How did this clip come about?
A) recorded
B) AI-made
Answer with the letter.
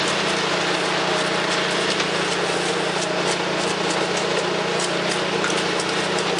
A